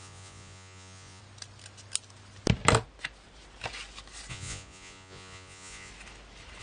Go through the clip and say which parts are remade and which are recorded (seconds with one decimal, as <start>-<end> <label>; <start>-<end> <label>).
0.0-1.2 remade; 1.2-4.3 recorded; 4.3-5.9 remade; 5.9-6.6 recorded